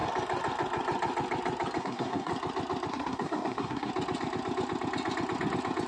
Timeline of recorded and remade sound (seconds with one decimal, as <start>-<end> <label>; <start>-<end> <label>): 0.0-1.8 recorded; 1.8-2.3 remade; 2.3-2.9 recorded; 2.9-3.9 remade; 3.9-5.9 recorded